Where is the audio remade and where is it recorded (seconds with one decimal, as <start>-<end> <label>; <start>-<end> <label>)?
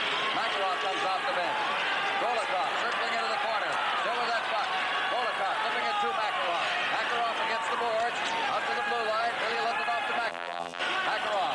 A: 0.0-10.3 recorded; 10.3-10.8 remade; 10.8-11.5 recorded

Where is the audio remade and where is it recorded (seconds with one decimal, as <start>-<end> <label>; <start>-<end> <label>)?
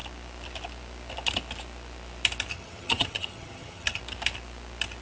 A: 0.0-2.5 recorded; 2.5-4.0 remade; 4.0-5.0 recorded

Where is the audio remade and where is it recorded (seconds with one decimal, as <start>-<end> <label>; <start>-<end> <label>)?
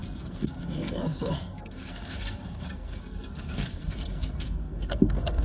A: 0.0-5.4 remade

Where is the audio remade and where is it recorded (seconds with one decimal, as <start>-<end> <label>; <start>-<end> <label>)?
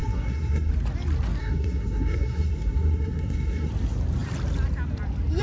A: 0.0-0.7 remade; 0.7-1.4 recorded; 1.4-3.7 remade; 3.7-5.4 recorded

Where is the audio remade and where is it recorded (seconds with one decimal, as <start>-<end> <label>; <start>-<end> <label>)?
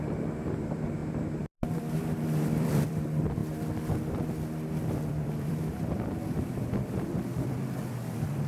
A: 0.0-3.4 remade; 3.4-4.9 recorded; 4.9-8.5 remade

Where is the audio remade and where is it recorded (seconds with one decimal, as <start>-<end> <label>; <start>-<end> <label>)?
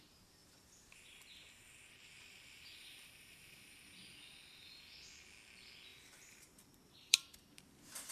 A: 0.0-2.8 recorded; 2.8-4.0 remade; 4.0-5.9 recorded; 5.9-7.3 remade; 7.3-8.1 recorded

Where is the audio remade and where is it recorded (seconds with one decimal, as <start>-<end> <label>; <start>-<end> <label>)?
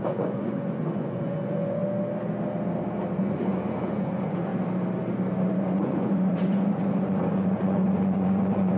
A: 0.0-1.8 remade; 1.8-3.2 recorded; 3.2-4.5 remade; 4.5-5.5 recorded; 5.5-8.8 remade